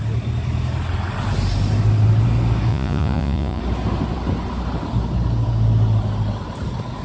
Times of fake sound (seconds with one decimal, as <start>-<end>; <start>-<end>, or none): 2.7-3.6